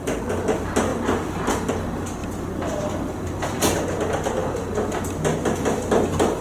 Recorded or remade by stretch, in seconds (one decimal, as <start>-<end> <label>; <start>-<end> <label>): 0.0-6.4 recorded